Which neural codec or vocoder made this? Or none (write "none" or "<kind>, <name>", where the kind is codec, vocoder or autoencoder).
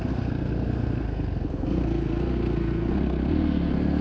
codec, SNAC